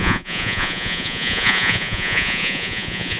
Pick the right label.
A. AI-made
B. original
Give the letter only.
A